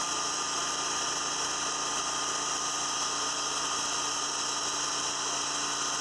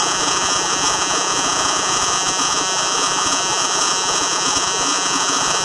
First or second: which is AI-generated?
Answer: second